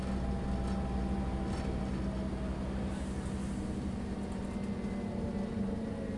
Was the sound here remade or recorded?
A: recorded